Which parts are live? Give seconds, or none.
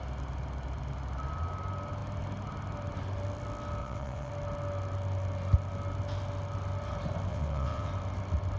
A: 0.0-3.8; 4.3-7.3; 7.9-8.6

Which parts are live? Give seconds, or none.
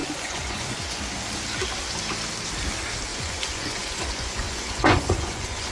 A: 1.0-3.1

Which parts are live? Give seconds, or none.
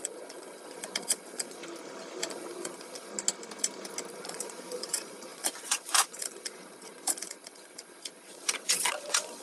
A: 1.6-2.3; 3.1-4.1